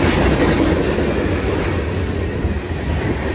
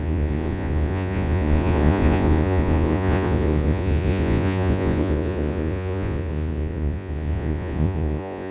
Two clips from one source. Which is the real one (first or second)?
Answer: first